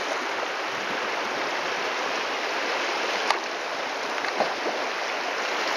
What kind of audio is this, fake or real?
real